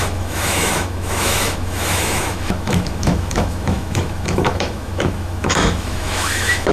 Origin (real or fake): fake